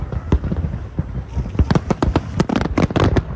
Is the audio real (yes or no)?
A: yes